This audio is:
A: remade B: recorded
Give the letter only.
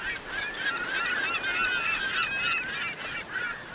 B